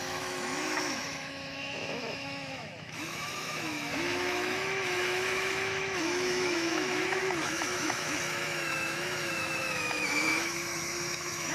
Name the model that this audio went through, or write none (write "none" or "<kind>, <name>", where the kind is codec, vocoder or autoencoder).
autoencoder, DAC-VAE